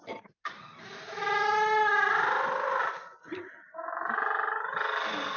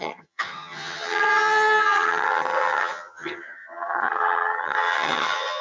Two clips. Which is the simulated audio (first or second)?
second